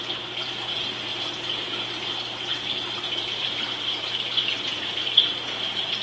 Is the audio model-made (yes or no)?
yes